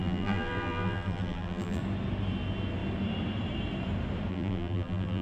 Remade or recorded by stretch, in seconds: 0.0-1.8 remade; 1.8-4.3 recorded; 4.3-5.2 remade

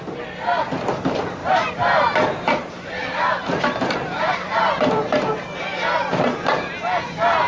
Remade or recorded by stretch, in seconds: 0.0-1.4 recorded; 1.4-5.6 remade; 5.6-7.5 recorded

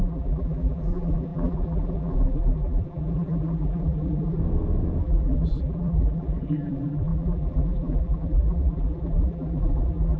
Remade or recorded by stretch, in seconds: 0.0-4.4 remade; 4.4-5.0 recorded; 5.0-10.2 remade

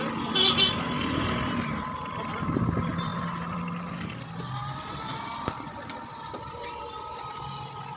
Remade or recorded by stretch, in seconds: 0.0-4.6 recorded; 4.6-6.8 remade; 6.8-8.0 recorded